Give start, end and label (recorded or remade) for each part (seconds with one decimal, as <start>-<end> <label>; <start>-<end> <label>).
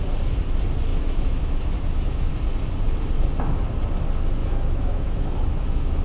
0.0-0.9 recorded; 0.9-2.3 remade; 2.3-4.4 recorded; 4.4-6.0 remade